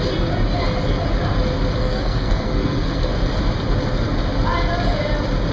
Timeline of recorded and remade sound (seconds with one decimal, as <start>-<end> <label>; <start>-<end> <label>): 0.0-1.8 recorded; 1.8-3.1 remade; 3.1-5.5 recorded